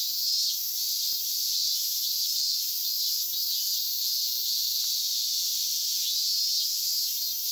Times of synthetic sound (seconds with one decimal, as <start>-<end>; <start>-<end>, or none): 1.3-3.2